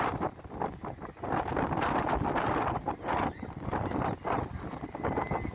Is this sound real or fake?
real